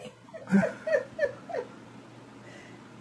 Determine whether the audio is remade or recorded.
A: recorded